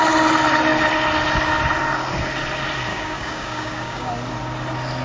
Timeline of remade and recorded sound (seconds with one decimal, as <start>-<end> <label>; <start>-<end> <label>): 0.0-2.9 recorded; 2.9-4.1 remade; 4.1-5.0 recorded